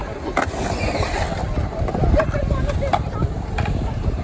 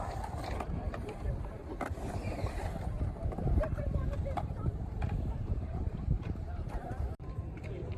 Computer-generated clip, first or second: second